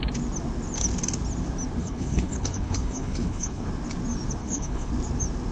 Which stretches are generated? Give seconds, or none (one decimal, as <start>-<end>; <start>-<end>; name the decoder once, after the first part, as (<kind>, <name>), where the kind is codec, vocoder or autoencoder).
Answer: 1.8-3.7 (codec, HILCodec); 4.4-4.9